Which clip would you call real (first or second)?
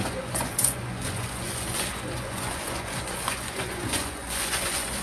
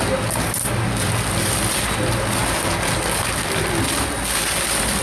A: second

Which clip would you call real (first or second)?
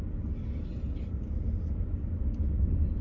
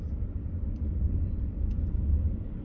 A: first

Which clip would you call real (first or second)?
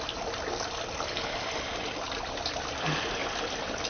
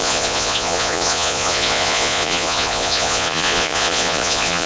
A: first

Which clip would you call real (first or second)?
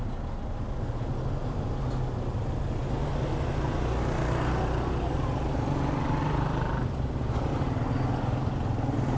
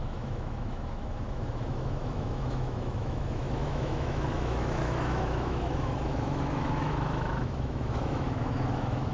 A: first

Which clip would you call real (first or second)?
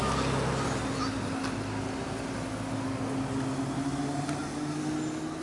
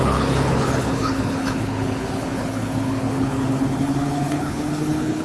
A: first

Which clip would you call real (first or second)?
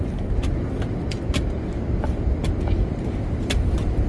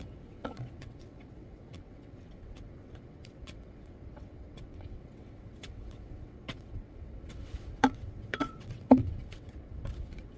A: first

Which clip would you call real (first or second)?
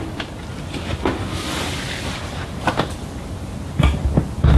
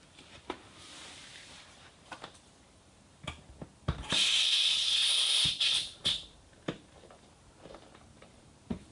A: first